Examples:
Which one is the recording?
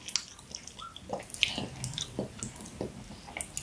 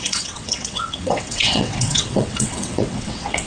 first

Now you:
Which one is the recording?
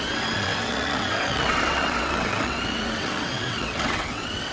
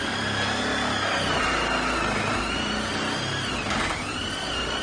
second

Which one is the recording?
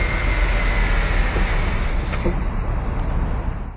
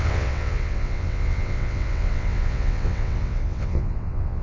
first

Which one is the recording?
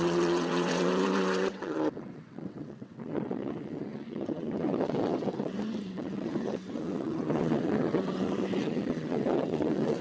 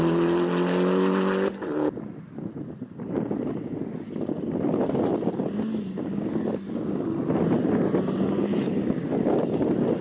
second